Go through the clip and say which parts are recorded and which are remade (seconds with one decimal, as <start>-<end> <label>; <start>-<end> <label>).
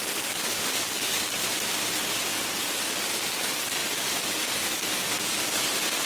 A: 0.0-1.4 remade; 1.4-2.3 recorded; 2.3-6.1 remade